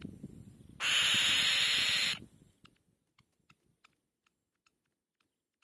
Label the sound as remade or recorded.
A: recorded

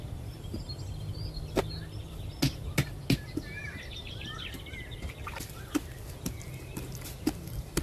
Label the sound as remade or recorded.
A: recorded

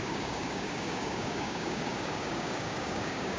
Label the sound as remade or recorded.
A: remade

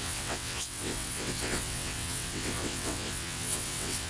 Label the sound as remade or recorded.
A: remade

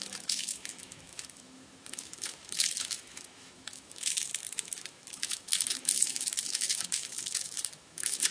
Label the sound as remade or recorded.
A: remade